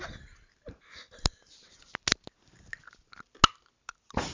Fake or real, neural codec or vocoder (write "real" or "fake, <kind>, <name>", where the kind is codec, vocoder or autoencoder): real